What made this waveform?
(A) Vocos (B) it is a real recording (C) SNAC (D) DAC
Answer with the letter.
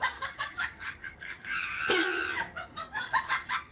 D